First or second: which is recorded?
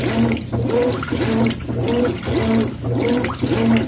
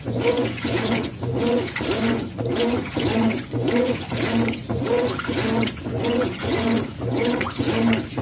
first